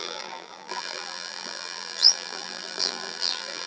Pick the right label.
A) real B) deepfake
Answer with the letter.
B